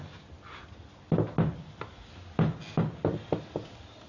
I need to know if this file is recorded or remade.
recorded